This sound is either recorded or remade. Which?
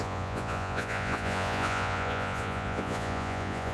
remade